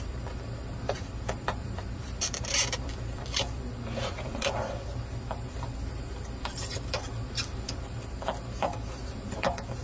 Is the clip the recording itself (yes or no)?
no